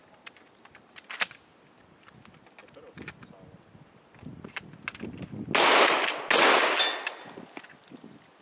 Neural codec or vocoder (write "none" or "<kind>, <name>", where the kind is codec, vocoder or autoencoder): none